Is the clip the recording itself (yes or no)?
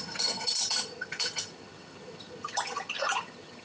no